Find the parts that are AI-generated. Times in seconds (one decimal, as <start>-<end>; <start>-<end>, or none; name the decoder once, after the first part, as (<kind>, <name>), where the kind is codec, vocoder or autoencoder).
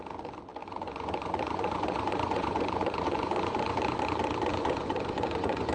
0.6-4.0 (vocoder, Vocos); 4.5-5.7